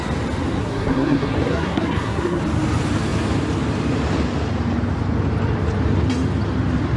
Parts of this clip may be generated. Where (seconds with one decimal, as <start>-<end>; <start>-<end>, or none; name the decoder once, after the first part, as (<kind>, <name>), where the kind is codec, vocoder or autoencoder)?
0.6-2.4 (codec, SNAC)